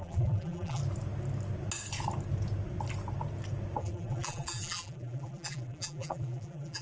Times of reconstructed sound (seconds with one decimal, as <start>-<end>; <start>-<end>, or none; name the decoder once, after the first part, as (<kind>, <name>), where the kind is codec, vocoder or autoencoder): 0.0-0.8 (vocoder, BigVGAN v2); 3.8-6.8